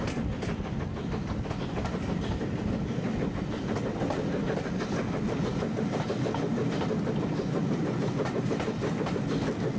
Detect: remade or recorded recorded